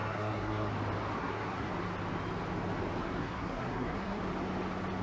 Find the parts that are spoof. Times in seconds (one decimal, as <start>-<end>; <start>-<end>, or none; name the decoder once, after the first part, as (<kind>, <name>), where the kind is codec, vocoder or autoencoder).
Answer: 0.0-0.7 (codec, SNAC); 1.2-1.7; 3.0-4.2